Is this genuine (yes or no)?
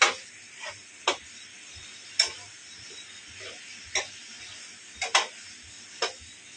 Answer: yes